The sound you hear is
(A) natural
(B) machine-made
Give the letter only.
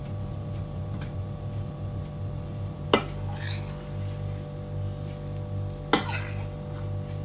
A